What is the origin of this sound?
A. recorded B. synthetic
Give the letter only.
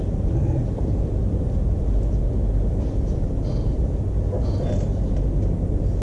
A